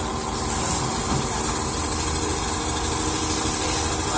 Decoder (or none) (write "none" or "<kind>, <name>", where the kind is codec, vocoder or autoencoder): none